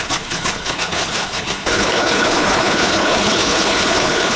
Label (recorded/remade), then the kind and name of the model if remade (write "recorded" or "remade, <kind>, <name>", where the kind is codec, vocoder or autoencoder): remade, codec, HILCodec